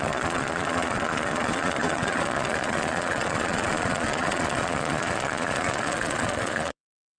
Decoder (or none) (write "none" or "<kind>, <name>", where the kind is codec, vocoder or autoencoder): vocoder, Vocos